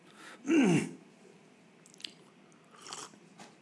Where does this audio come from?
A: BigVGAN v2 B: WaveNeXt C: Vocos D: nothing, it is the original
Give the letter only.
D